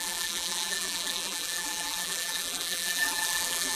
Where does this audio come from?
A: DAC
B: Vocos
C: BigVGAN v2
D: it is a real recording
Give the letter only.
C